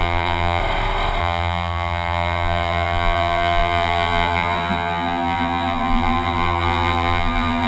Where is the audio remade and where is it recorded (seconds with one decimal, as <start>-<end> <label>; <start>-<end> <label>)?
0.0-0.6 remade; 0.6-1.2 recorded; 1.2-7.7 remade